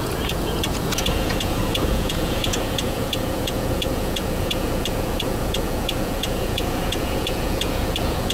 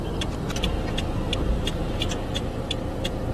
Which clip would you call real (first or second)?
second